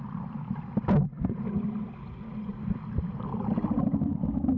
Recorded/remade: recorded